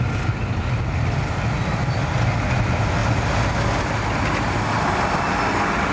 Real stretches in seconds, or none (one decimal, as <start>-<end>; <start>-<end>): 0.0-5.9